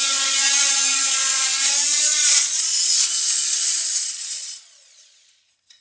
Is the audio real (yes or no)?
no